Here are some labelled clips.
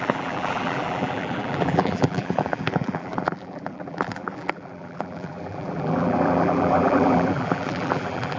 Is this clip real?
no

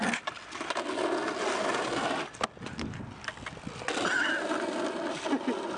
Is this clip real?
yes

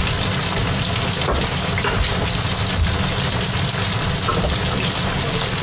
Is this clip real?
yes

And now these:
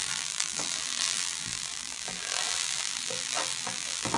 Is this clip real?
no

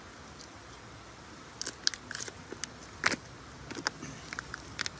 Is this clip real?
no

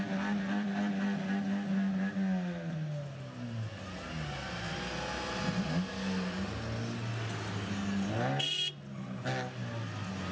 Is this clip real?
yes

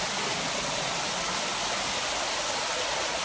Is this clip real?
yes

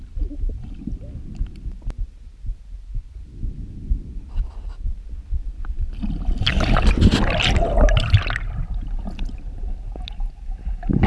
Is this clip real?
yes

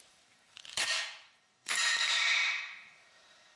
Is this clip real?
no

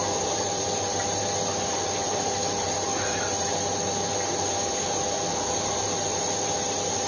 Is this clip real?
no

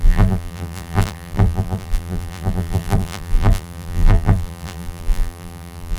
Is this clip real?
no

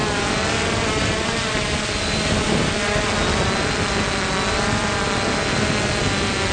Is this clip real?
yes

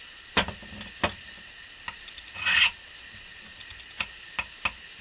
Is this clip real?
yes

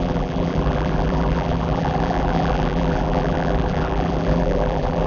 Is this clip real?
no